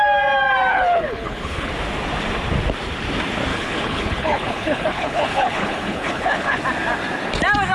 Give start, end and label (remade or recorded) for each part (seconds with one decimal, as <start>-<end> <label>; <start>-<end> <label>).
0.0-0.7 recorded; 0.7-1.7 remade; 1.7-3.5 recorded; 3.5-6.6 remade; 6.6-7.7 recorded